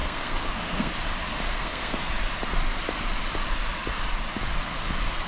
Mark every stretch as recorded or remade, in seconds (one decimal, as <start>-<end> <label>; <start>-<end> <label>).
0.0-0.9 remade; 0.9-1.5 recorded; 1.5-2.0 remade; 2.0-5.3 recorded